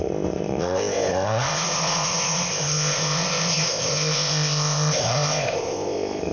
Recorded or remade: remade